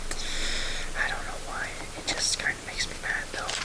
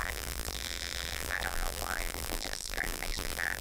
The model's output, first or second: second